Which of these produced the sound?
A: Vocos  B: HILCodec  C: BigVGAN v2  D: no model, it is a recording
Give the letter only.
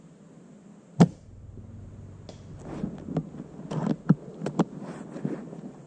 D